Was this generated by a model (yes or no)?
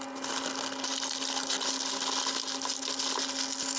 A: no